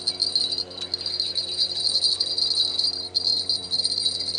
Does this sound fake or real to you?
real